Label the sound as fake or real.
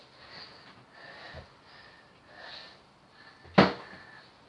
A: real